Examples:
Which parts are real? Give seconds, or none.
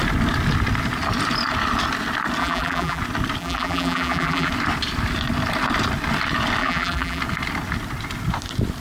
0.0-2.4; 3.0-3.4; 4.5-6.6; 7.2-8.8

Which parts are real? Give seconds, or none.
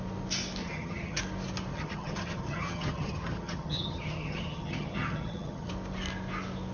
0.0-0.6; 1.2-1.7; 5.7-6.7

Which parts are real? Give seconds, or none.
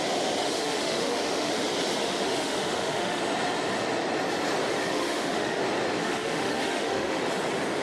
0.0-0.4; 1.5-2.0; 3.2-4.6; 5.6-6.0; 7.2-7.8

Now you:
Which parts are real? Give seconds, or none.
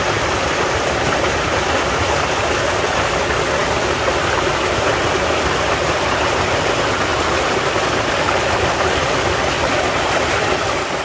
0.0-11.0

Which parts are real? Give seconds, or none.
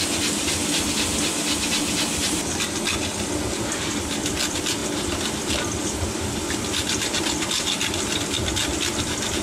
0.0-9.4